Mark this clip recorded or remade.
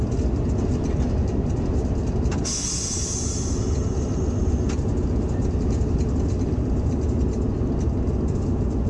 recorded